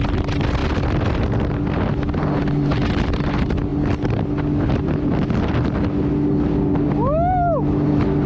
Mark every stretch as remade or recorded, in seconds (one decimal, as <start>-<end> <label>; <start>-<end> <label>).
0.0-8.3 recorded